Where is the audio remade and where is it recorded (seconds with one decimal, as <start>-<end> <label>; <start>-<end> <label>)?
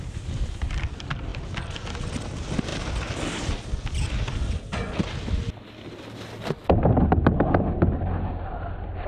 0.0-9.1 recorded